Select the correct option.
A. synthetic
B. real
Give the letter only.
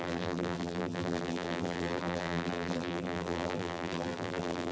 A